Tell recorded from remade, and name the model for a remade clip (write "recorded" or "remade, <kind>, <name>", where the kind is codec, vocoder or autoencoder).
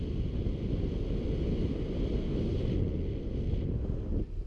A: recorded